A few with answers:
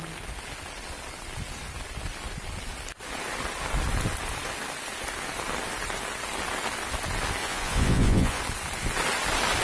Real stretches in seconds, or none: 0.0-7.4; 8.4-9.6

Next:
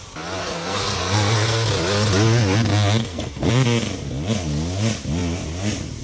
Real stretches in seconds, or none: 0.0-0.4; 1.7-3.0; 3.5-6.0

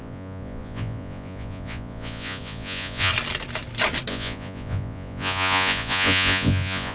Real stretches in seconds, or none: 3.1-4.1

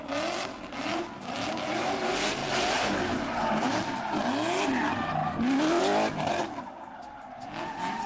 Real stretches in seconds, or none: 0.0-8.1

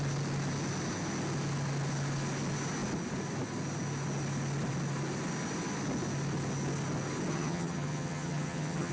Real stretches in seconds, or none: 0.0-7.3

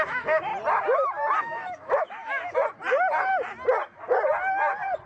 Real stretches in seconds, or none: 0.5-1.4; 2.6-5.1

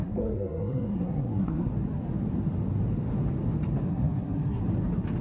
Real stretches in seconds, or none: 1.7-3.9; 4.6-5.2

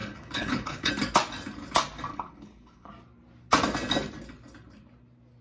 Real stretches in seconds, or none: 0.9-2.1; 2.9-5.4